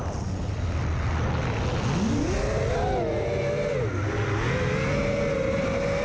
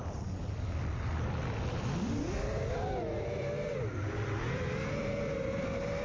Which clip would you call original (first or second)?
first